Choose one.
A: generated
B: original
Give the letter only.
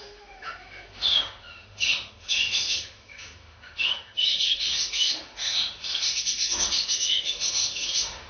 A